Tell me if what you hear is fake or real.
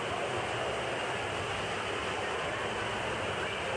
real